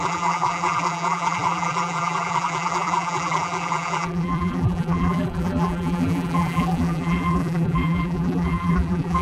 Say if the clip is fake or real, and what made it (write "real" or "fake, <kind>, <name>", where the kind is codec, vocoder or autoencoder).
fake, vocoder, BigVGAN v2